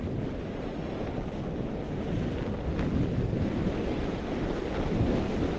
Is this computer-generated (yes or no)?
no